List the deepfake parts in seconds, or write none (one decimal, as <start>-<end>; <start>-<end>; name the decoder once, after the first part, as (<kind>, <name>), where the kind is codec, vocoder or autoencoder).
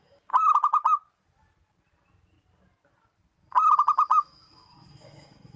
0.0-0.8 (autoencoder, DAC-VAE); 4.2-5.6